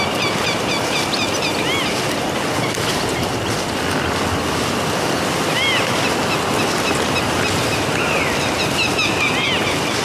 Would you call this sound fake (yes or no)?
no